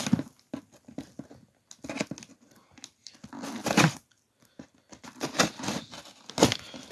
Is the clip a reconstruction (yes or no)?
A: no